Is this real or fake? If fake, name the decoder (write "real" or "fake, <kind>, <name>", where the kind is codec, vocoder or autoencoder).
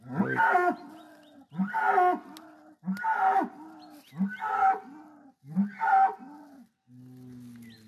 real